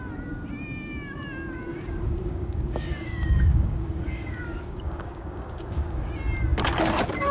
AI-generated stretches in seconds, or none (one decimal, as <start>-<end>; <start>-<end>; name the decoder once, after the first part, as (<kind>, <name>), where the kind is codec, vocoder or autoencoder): 1.7-6.1 (codec, DAC)